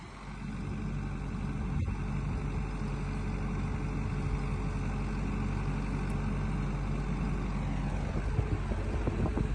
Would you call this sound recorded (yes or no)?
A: yes